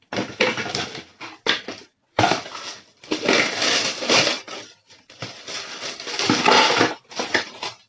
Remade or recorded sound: recorded